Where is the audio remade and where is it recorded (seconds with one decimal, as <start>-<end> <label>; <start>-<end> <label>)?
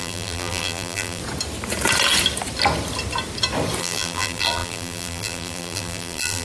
0.0-1.2 remade; 1.2-3.8 recorded; 3.8-6.4 remade